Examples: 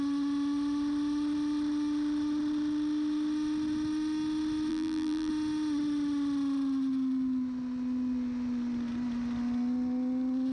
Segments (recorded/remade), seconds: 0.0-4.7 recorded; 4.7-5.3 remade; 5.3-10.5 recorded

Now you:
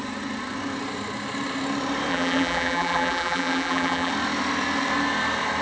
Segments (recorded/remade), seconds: 0.0-2.1 recorded; 2.1-4.1 remade; 4.1-5.6 recorded

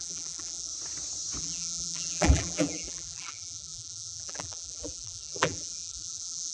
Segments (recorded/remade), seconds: 0.0-0.7 remade; 0.7-1.4 recorded; 1.4-6.5 remade

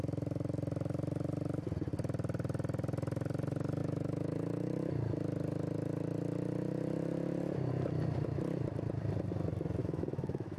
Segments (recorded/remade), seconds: 0.0-3.8 recorded; 3.8-4.9 remade; 4.9-9.8 recorded; 9.8-10.6 remade

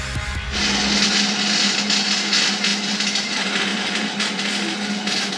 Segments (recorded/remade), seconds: 0.0-3.7 recorded; 3.7-4.3 remade; 4.3-5.4 recorded

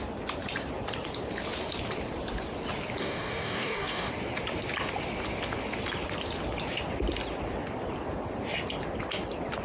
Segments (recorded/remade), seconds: 0.0-3.0 recorded; 3.0-4.1 remade; 4.1-9.6 recorded